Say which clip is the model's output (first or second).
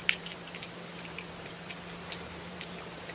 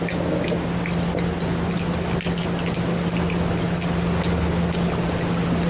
first